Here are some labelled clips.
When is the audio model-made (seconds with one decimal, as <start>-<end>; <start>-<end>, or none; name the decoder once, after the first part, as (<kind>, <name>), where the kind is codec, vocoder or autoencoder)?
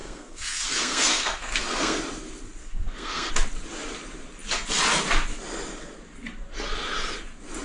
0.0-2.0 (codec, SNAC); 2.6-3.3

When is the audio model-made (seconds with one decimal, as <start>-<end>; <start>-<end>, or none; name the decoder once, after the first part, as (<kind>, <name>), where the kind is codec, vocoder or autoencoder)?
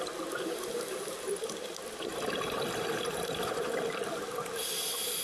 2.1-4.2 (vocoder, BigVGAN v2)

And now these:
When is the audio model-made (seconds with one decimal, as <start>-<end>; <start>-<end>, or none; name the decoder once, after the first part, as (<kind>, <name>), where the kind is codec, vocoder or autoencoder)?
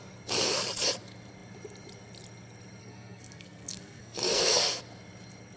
2.8-4.8 (codec, SNAC)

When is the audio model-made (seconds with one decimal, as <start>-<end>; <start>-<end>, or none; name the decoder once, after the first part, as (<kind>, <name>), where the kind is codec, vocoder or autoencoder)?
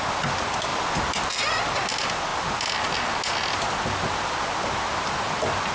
0.7-1.4 (vocoder, BigVGAN v2)